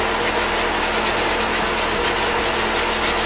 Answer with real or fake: real